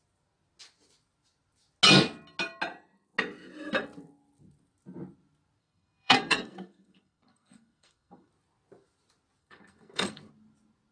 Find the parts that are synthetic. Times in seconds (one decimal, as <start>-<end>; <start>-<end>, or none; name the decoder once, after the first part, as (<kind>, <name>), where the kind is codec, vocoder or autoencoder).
5.6-8.3 (codec, SNAC); 9.4-10.3